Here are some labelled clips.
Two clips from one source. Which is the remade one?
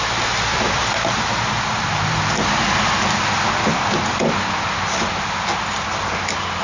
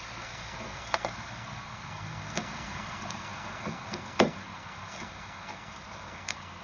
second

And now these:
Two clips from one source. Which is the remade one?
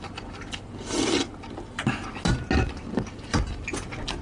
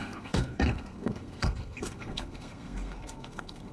second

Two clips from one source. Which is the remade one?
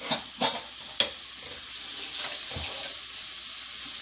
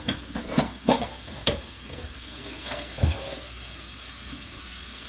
second